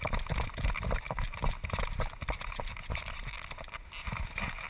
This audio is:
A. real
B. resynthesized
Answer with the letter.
A